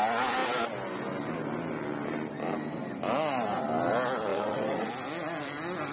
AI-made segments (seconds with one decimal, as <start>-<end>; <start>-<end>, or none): 4.3-4.9